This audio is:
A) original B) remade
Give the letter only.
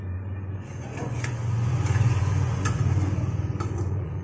B